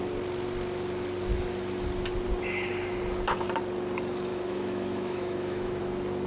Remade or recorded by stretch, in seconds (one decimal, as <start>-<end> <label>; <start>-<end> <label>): 0.0-4.3 recorded; 4.3-5.8 remade; 5.8-6.3 recorded